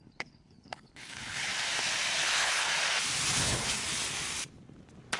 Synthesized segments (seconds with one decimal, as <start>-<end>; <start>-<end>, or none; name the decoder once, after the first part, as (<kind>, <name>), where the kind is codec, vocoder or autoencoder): 0.0-1.5 (codec, HILCodec); 2.2-2.7; 3.4-3.8